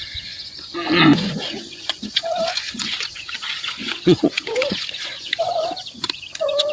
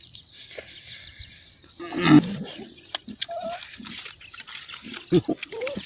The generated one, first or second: first